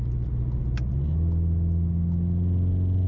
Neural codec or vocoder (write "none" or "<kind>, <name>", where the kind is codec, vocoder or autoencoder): none